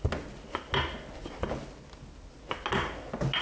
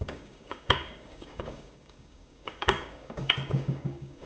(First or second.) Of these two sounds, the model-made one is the second